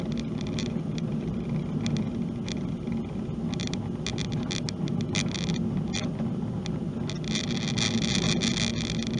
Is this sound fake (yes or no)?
no